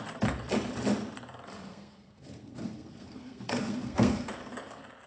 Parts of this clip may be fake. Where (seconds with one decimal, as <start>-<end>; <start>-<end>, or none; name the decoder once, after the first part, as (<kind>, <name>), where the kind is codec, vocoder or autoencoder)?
1.7-4.3 (codec, SNAC)

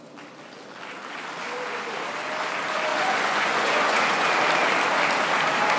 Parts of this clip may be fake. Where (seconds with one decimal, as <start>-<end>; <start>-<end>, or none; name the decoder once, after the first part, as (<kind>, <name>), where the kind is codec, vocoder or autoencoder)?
2.9-4.3 (vocoder, Vocos)

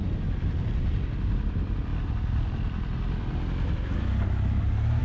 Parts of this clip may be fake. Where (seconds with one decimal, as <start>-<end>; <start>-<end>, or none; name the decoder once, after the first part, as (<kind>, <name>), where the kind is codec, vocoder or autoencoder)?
none